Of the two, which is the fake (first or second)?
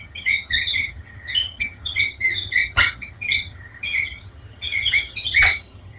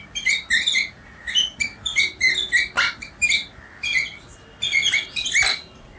first